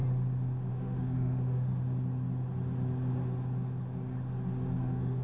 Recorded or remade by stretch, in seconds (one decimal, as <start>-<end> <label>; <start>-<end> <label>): 0.0-0.7 recorded; 0.7-1.7 remade; 1.7-4.8 recorded; 4.8-5.2 remade